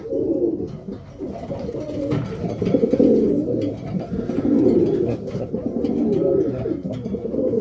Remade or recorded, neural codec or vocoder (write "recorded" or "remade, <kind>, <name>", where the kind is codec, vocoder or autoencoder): recorded